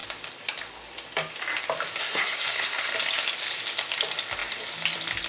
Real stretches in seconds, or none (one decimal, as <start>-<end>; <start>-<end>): 0.0-2.0; 2.9-5.3